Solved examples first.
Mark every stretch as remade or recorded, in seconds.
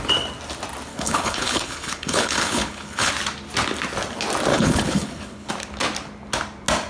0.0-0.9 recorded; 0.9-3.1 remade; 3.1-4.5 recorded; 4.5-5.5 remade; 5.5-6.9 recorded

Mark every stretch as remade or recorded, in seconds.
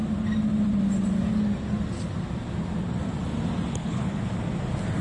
0.0-3.8 recorded; 3.8-4.4 remade; 4.4-5.0 recorded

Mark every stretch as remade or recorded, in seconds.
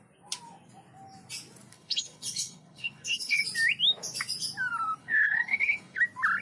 0.0-1.7 recorded; 1.7-3.4 remade; 3.4-5.0 recorded; 5.0-6.0 remade; 6.0-6.4 recorded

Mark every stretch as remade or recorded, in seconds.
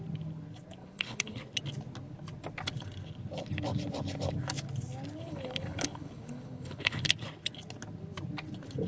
0.0-0.8 recorded; 0.8-1.4 remade; 1.4-5.2 recorded; 5.2-7.1 remade; 7.1-8.9 recorded